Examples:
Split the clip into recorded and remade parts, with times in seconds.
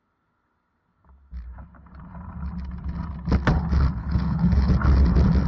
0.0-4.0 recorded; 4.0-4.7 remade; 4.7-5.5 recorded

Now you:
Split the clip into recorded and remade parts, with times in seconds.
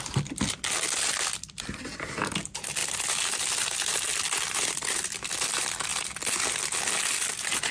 0.0-7.7 recorded